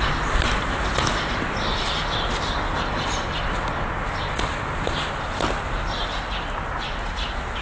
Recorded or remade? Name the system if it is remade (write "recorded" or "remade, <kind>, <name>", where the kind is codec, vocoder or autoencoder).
recorded